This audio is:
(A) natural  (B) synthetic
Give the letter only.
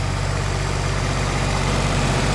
B